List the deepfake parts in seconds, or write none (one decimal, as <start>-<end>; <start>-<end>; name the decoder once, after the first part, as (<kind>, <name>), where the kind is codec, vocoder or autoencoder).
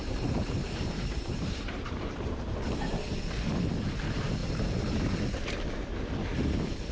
0.0-2.2 (vocoder, BigVGAN v2); 4.4-5.2